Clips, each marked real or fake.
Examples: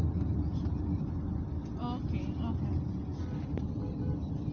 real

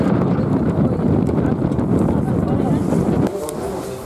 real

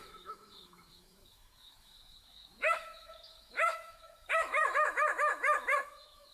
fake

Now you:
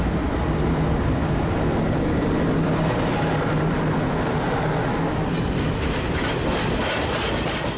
real